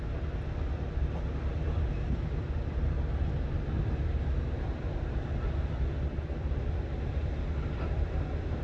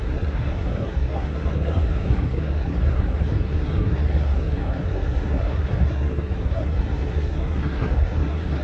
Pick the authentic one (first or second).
first